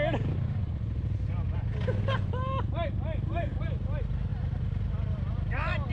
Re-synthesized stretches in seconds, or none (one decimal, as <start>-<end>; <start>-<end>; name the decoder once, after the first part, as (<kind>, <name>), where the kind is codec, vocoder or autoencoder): none